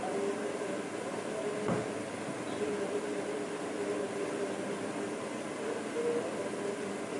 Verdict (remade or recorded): recorded